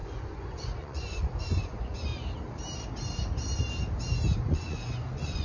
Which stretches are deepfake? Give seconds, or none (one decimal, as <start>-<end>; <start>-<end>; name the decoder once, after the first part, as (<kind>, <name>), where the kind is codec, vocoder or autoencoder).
0.0-2.1 (vocoder, Vocos); 4.5-5.4